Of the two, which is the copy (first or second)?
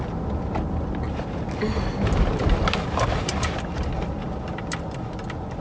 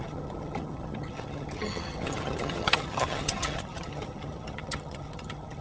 second